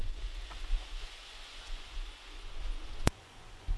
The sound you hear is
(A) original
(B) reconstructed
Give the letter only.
B